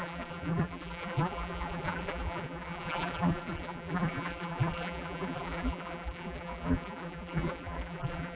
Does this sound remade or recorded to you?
remade